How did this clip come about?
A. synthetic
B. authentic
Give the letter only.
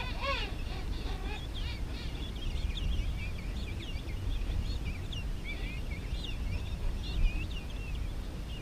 B